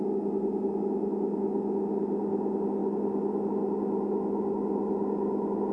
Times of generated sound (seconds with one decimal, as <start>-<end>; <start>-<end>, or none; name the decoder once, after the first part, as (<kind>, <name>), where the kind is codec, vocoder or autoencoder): none